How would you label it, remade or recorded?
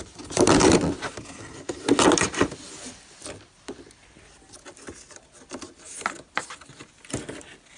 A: recorded